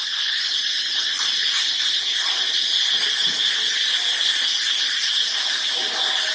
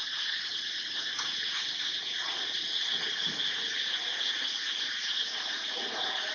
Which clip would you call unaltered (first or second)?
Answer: first